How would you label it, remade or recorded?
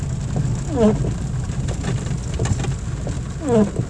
recorded